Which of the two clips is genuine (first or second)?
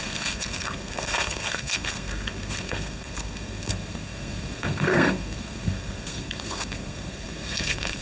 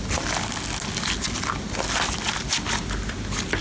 second